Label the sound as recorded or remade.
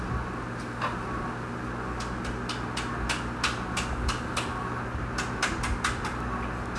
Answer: recorded